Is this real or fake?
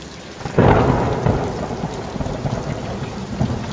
real